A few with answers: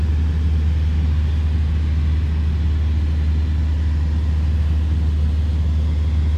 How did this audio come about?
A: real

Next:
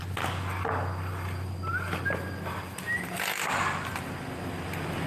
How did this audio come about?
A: real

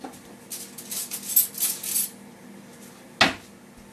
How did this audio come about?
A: real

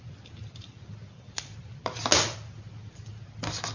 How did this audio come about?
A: real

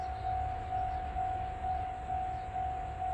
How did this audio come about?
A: fake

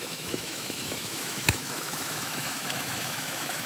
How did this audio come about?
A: fake